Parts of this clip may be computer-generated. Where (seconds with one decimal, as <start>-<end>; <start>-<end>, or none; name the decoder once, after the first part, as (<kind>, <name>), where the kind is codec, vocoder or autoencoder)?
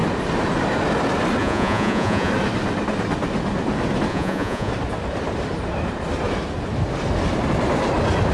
1.4-2.3 (vocoder, Vocos); 4.1-4.7